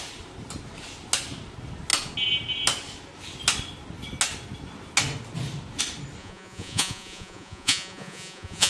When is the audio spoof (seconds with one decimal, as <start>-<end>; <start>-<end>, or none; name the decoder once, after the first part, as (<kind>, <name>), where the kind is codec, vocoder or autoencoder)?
6.2-8.7 (vocoder, Vocos)